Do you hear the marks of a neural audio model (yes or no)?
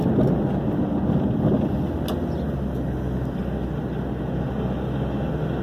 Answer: no